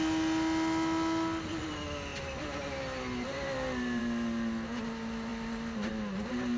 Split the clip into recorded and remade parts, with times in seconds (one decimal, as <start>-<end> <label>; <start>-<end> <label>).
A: 0.0-6.6 recorded